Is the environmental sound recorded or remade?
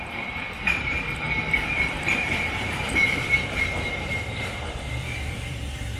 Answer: remade